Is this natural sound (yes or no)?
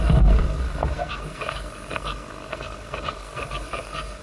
no